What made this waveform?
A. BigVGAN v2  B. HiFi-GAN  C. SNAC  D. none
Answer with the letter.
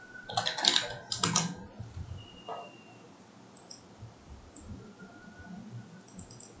D